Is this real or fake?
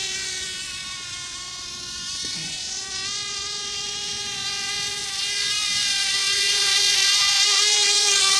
fake